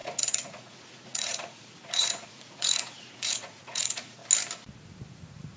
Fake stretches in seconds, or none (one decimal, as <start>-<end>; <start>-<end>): 0.0-4.2; 5.1-5.6